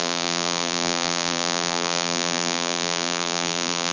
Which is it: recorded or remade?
remade